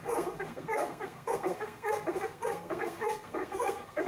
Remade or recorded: remade